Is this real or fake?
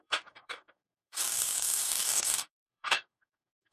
fake